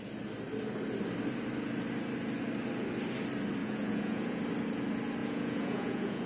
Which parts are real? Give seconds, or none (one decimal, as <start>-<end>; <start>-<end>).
0.0-3.6; 4.4-5.2